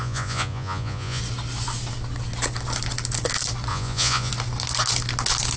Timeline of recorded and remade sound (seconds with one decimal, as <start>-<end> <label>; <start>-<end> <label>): 0.0-1.2 remade; 1.2-3.7 recorded; 3.7-4.3 remade; 4.3-5.6 recorded